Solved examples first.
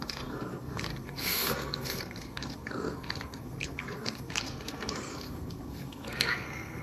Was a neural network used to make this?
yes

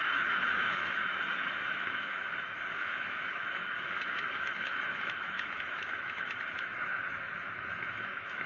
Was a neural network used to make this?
yes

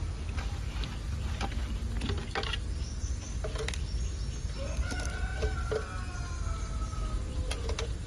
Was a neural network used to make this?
no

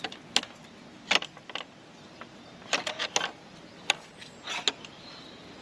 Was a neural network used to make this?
no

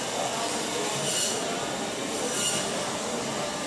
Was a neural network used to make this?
no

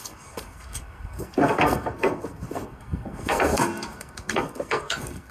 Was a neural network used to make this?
yes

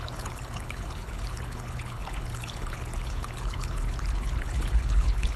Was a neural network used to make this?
yes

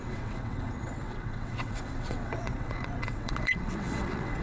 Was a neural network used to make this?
yes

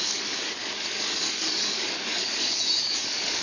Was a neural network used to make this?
yes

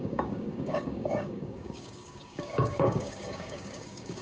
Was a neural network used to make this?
yes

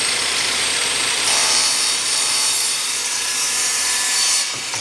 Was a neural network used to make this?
yes